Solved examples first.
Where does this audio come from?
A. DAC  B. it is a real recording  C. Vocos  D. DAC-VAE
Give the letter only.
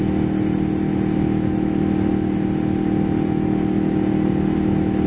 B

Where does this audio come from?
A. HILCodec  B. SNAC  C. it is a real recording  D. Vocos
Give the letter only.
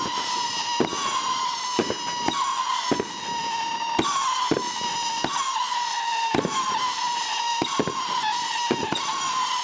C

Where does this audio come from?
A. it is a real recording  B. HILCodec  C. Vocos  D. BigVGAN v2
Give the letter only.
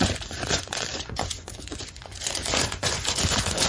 C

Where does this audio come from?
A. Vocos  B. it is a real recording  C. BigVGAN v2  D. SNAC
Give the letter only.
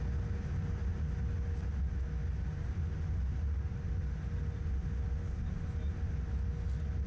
B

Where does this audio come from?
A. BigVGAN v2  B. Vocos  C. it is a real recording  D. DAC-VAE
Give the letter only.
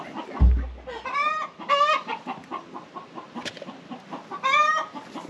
C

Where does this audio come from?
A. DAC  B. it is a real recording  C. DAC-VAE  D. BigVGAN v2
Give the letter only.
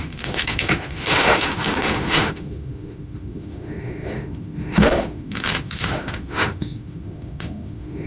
C